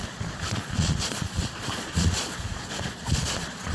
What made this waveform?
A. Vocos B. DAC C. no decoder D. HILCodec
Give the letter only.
A